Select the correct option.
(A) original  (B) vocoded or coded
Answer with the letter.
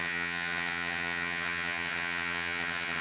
B